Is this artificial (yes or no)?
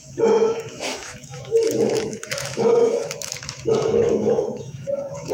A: yes